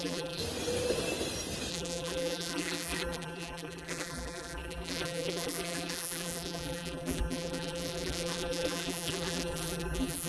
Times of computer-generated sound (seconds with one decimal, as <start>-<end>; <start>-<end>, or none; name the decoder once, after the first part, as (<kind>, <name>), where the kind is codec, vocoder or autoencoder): 0.0-0.4 (vocoder, BigVGAN v2); 1.7-10.3